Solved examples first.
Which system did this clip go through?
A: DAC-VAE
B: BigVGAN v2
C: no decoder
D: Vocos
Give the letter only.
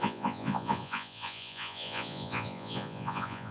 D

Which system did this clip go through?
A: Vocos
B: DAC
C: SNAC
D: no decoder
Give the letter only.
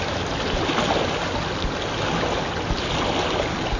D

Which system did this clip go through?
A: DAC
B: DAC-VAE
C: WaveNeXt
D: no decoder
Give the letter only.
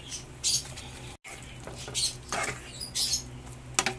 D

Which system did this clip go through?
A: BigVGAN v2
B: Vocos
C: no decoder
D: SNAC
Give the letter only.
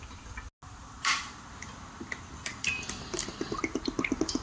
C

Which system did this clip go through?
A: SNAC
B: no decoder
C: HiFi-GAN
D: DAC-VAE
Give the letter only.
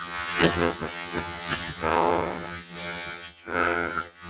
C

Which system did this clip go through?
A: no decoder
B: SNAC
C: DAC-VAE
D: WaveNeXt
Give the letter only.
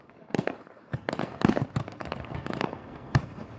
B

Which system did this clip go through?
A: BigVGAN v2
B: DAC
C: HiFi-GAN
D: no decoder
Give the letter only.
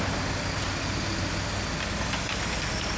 D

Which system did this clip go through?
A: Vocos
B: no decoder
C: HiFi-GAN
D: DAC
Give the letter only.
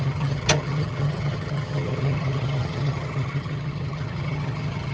C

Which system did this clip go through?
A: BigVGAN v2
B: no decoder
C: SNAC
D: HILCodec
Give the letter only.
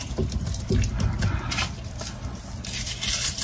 B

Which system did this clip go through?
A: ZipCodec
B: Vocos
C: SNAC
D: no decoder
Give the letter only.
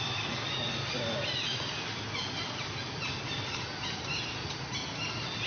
D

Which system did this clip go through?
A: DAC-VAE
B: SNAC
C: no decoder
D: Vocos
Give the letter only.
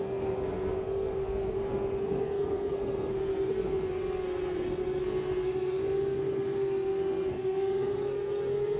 B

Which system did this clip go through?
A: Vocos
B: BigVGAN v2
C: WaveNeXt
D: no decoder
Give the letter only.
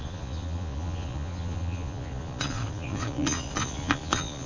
A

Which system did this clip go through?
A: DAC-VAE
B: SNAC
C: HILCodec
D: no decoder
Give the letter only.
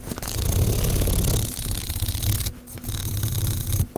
D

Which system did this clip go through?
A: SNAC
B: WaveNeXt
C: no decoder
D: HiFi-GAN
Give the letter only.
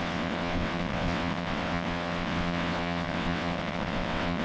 B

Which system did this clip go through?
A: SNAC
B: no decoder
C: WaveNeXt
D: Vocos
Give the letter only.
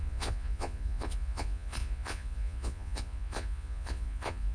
D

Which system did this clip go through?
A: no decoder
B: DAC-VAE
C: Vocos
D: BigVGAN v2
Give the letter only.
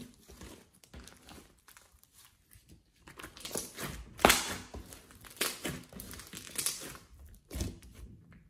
A